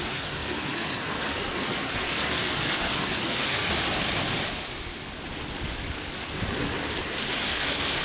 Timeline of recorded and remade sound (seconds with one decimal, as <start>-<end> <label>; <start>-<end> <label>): 0.0-3.7 remade; 3.7-7.5 recorded; 7.5-8.0 remade